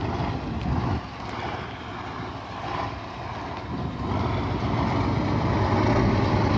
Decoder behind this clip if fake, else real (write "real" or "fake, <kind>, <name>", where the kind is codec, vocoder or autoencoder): real